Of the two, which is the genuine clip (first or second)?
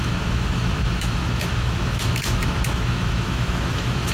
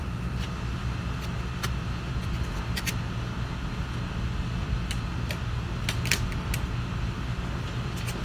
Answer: second